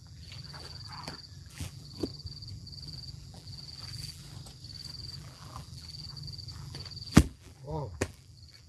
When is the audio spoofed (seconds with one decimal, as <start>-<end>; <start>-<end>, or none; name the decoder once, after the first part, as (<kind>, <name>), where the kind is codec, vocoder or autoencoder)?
0.0-4.2 (vocoder, BigVGAN v2); 4.9-8.7